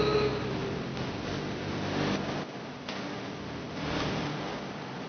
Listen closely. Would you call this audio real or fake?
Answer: real